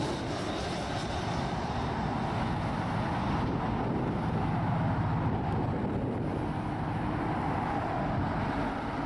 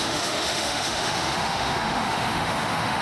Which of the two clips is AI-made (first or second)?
second